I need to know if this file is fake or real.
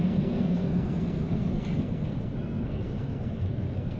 fake